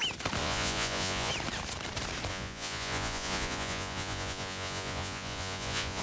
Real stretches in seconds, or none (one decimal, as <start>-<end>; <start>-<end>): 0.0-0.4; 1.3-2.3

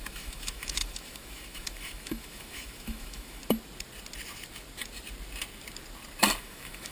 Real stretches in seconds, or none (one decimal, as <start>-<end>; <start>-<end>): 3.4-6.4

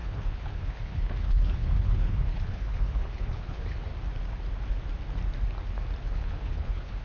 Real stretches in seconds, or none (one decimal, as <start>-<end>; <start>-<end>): 3.9-6.0

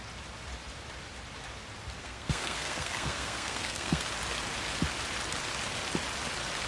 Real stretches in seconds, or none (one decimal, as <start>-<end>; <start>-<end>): 0.0-2.0; 4.1-6.7